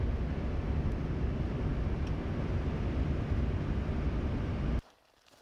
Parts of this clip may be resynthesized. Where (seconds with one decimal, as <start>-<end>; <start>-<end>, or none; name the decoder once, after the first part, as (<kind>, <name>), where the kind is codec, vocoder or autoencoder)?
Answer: none